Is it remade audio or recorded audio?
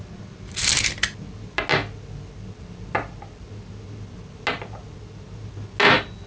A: recorded